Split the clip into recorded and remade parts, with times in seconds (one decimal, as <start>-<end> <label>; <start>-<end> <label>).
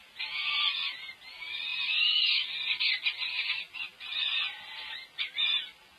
0.0-6.0 recorded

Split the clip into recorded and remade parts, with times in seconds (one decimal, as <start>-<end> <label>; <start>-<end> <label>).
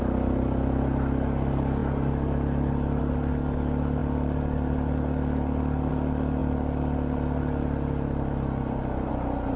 0.0-9.6 recorded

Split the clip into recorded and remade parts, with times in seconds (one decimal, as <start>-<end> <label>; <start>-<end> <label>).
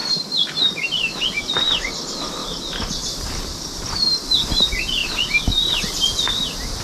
0.0-1.4 remade; 1.4-2.4 recorded; 2.4-3.8 remade; 3.8-6.8 recorded